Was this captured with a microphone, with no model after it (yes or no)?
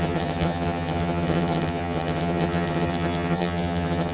no